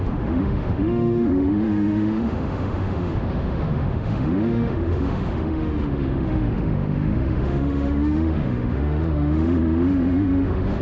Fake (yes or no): yes